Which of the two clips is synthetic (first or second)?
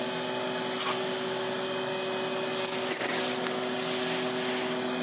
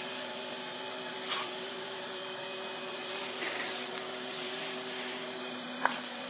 second